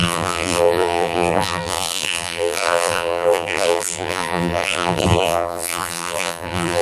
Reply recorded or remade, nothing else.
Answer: remade